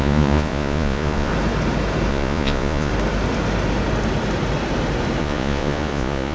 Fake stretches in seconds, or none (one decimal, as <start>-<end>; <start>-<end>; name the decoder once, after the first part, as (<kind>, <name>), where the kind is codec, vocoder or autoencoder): 0.0-1.3 (vocoder, Vocos); 2.1-2.9; 5.2-6.3

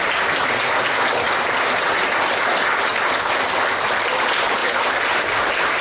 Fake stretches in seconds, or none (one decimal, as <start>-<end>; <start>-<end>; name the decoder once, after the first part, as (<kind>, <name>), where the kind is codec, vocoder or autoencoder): 0.0-1.1 (vocoder, BigVGAN v2); 2.5-2.9; 4.1-5.8

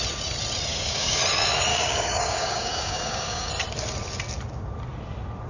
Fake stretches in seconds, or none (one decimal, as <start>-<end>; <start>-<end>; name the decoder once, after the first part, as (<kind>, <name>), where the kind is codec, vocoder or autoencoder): 0.7-1.2 (codec, DAC); 1.7-3.5

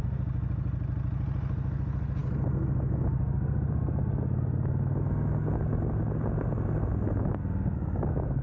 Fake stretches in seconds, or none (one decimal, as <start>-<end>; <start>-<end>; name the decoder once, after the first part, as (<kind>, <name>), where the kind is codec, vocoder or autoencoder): none

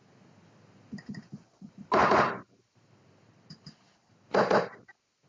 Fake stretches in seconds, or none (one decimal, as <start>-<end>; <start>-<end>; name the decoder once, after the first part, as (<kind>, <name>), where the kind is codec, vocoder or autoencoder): 2.0-4.6 (vocoder, BigVGAN v2)